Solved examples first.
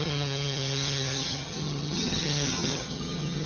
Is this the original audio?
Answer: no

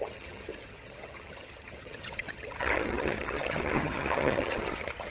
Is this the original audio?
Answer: no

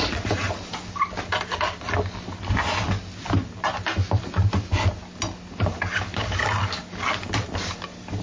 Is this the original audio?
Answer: yes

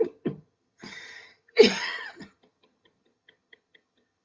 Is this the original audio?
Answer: no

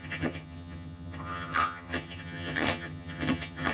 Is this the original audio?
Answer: no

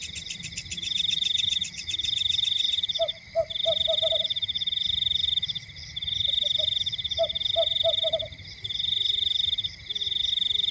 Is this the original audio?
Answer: yes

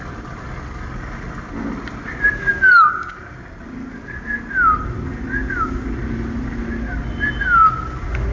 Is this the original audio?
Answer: yes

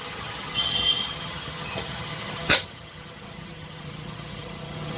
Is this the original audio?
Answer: no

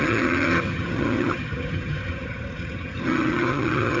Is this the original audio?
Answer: no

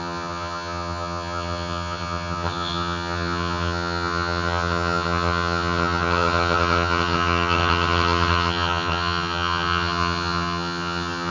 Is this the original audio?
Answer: no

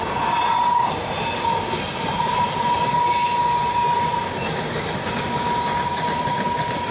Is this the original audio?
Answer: yes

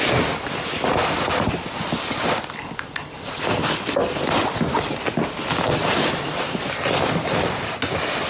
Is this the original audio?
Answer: yes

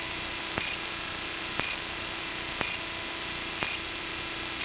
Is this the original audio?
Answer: yes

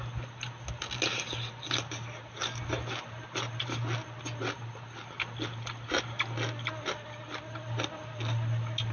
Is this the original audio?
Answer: yes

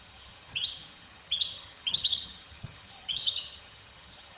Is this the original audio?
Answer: no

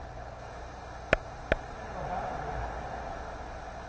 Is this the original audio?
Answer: yes